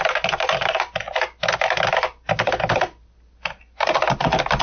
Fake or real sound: real